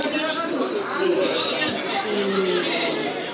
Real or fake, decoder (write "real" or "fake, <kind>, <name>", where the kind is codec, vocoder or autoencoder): real